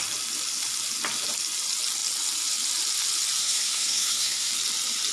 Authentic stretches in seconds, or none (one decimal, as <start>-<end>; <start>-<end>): 0.0-3.4; 4.5-5.1